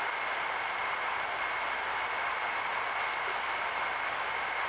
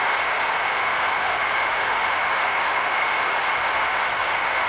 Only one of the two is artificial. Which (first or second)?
second